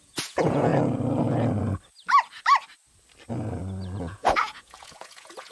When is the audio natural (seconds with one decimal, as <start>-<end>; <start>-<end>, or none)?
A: 0.7-4.0